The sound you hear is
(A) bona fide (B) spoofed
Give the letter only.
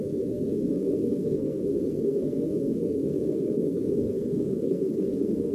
B